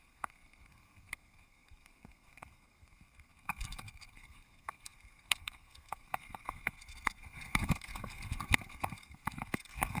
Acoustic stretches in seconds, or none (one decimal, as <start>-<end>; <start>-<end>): none